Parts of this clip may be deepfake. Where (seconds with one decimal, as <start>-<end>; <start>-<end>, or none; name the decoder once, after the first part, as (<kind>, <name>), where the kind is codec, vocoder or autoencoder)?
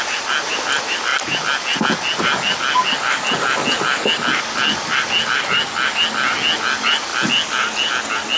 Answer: none